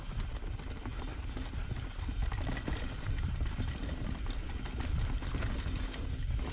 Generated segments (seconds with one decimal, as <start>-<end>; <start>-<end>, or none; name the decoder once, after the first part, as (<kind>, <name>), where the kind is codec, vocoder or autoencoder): none

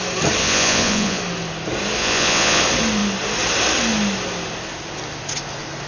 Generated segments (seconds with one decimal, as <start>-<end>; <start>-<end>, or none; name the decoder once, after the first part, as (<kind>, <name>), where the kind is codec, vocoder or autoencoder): 0.4-1.2 (vocoder, Vocos); 2.0-2.6

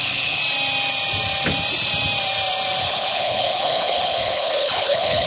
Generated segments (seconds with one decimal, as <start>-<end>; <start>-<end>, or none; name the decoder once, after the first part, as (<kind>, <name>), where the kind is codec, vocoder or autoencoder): 0.0-0.4 (codec, HILCodec); 2.8-5.3

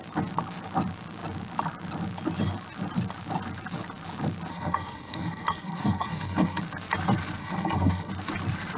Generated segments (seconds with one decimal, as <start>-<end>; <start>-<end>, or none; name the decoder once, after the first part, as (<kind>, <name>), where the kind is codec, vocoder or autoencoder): 4.5-6.6 (codec, SNAC); 7.4-8.1

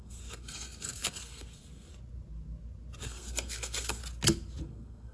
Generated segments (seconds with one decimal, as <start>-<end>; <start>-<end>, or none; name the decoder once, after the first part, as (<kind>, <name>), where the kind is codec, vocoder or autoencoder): 0.0-1.9 (codec, SNAC); 3.0-4.0; 4.6-5.1